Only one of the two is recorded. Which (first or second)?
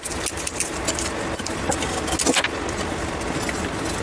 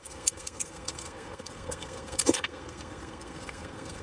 first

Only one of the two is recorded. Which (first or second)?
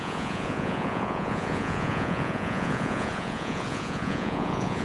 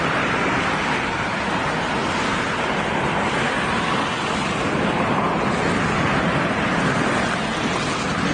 second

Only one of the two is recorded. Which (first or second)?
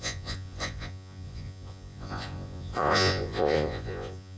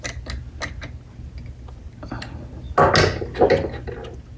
second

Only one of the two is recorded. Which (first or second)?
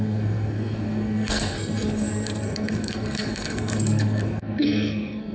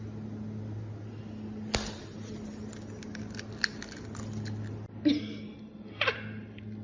second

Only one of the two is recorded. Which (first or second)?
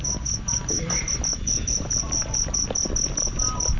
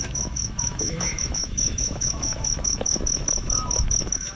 first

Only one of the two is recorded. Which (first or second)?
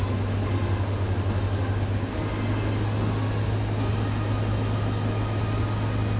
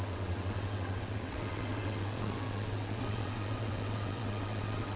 first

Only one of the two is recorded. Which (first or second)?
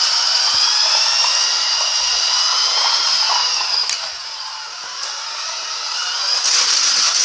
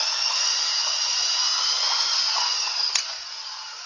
first